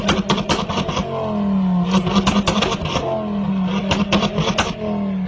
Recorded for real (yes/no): yes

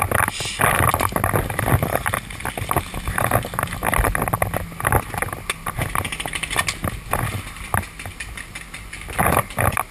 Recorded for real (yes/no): yes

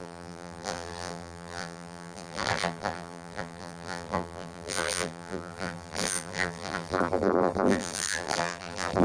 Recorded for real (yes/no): no